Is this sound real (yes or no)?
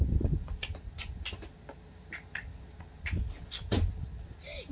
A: yes